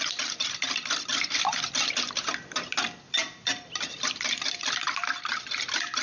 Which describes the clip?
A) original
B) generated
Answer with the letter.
B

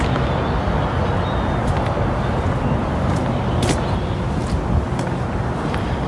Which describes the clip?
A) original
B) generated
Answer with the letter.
A